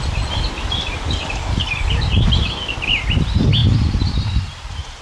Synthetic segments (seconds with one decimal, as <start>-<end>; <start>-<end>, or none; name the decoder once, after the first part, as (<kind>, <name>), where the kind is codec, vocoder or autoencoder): none